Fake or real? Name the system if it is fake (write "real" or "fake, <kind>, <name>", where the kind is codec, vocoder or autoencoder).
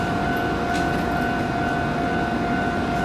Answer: real